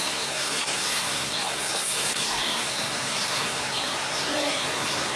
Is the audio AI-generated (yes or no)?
yes